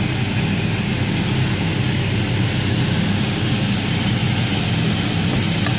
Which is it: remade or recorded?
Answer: recorded